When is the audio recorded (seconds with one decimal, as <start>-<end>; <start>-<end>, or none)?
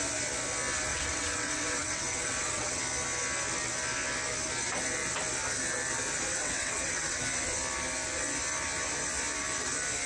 0.0-0.9; 2.8-6.4; 7.2-10.1